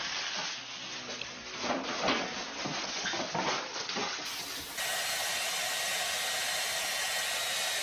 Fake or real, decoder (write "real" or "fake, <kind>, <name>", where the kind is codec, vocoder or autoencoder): real